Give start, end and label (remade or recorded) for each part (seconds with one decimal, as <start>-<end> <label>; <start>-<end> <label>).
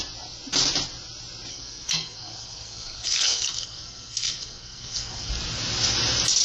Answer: 0.0-1.5 recorded; 1.5-5.3 remade; 5.3-6.4 recorded